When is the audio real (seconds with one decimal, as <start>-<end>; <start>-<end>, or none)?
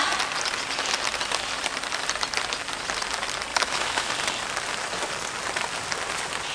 0.0-3.5; 4.1-6.5